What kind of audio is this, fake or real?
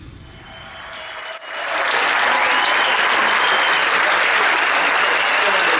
real